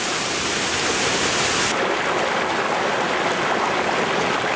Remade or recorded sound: recorded